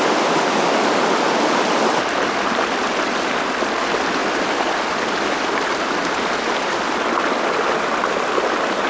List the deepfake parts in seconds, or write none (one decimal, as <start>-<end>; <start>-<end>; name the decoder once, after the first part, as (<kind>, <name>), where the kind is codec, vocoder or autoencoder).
none